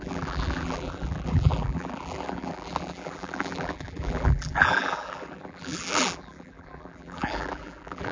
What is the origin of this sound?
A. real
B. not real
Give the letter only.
B